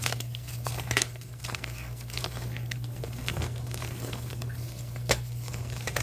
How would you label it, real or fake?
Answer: fake